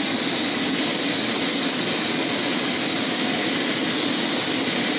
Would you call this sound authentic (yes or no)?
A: yes